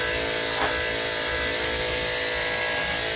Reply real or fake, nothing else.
real